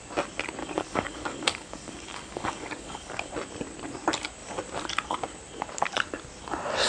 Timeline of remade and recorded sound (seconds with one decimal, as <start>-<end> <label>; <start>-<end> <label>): 0.0-0.6 recorded; 0.6-3.3 remade; 3.3-6.9 recorded